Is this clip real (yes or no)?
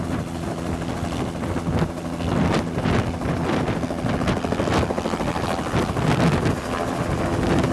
yes